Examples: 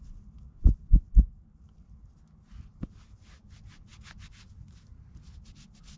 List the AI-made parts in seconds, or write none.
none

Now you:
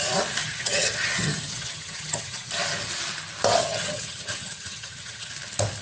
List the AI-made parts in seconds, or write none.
0.4-2.5 (vocoder, HiFi-GAN); 3.6-5.3

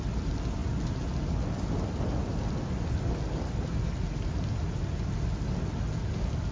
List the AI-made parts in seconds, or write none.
none

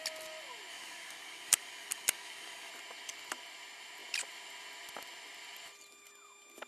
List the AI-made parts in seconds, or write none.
0.7-2.7 (codec, DAC)

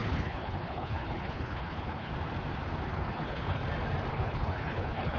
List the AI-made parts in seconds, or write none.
0.0-2.1 (codec, HILCodec); 2.9-3.6; 4.1-5.2

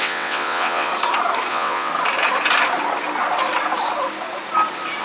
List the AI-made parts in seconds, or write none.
0.0-0.9 (vocoder, WaveNeXt); 1.5-1.9

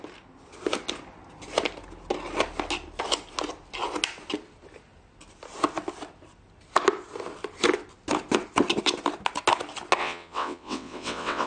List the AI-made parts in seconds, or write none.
10.0-11.5 (vocoder, WaveNeXt)